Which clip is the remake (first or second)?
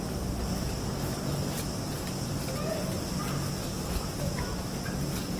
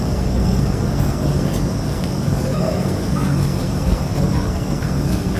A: second